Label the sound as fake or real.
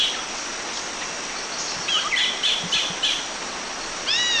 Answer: real